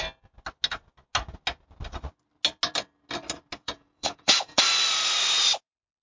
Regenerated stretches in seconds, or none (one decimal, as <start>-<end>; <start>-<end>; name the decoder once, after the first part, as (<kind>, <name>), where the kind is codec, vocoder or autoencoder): 3.6-4.6 (vocoder, Vocos)